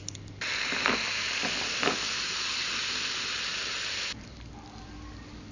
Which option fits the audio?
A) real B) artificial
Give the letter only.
A